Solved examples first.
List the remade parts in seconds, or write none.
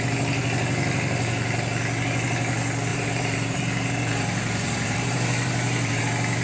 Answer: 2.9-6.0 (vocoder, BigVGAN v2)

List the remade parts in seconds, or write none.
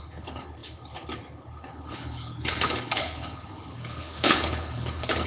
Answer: 0.0-5.3 (codec, HILCodec)